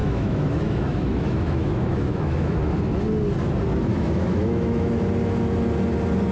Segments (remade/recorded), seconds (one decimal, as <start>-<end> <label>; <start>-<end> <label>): 0.0-2.6 remade; 2.6-3.9 recorded; 3.9-4.9 remade; 4.9-6.3 recorded